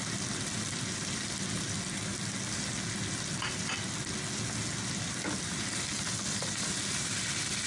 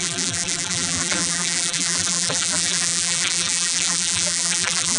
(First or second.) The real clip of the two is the first